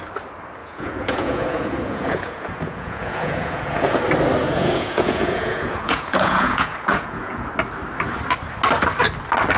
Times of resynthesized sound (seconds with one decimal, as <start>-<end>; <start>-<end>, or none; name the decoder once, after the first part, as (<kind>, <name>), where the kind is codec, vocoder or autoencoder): 0.6-4.0 (vocoder, Vocos); 4.4-7.5